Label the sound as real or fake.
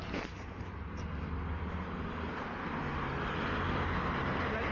real